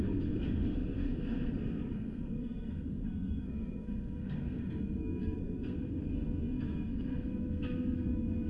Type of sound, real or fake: fake